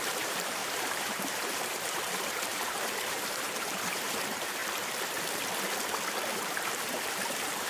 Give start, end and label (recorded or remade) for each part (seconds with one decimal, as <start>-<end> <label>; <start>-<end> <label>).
0.0-4.6 remade; 4.6-6.3 recorded; 6.3-7.7 remade